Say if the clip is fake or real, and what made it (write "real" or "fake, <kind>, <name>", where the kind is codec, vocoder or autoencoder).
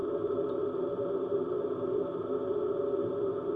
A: real